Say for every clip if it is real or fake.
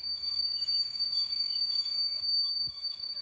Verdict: fake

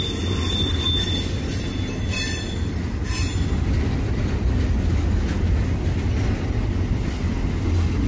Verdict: real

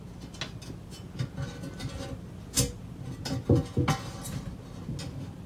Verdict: real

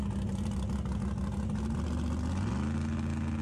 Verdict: real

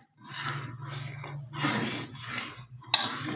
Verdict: real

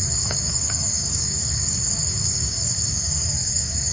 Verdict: fake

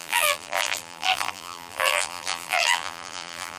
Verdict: fake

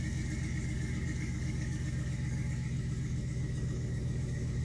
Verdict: fake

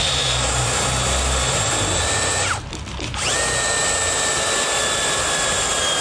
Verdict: fake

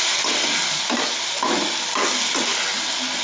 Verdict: real